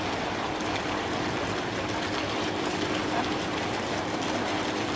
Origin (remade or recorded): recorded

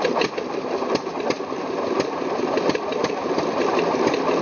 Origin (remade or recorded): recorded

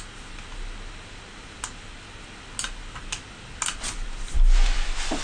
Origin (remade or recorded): recorded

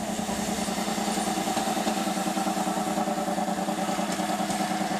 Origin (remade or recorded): recorded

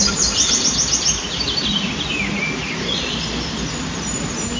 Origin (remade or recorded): recorded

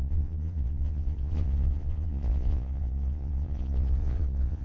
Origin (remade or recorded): remade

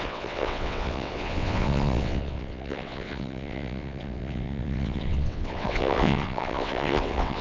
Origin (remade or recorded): remade